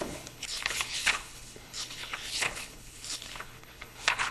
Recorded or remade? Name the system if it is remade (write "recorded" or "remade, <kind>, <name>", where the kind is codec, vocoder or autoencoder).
remade, codec, HILCodec